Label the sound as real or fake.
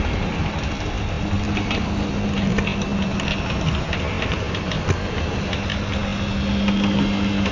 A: real